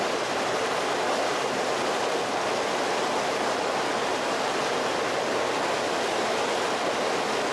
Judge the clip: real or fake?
real